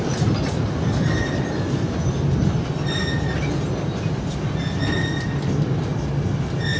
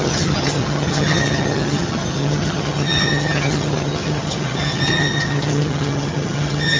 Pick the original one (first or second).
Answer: first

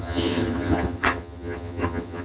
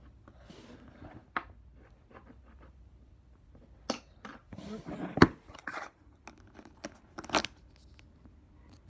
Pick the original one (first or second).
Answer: second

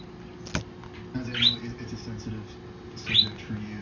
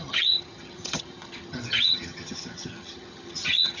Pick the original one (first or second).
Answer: first